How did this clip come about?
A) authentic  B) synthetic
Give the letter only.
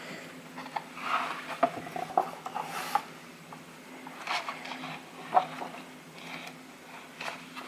A